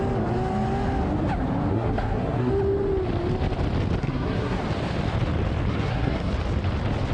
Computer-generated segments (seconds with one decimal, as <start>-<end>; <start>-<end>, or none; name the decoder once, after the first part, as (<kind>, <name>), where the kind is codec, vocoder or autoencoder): 1.7-2.5 (codec, SNAC); 4.0-4.6; 5.7-6.3